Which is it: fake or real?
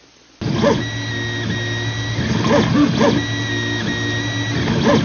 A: real